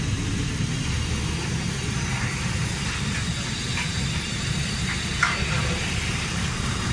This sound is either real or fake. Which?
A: fake